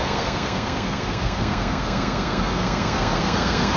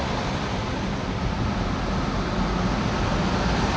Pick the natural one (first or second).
second